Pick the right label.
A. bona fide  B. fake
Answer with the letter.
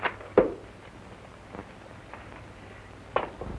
A